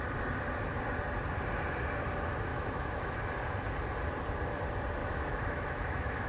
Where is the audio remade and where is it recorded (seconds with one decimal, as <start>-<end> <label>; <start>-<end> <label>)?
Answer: 0.0-2.5 recorded; 2.5-3.2 remade; 3.2-5.0 recorded; 5.0-6.3 remade